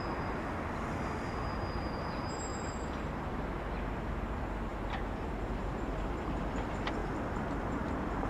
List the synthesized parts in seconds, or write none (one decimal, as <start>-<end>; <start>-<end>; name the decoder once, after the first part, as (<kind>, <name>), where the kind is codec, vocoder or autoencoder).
none